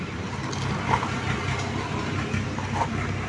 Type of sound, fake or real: real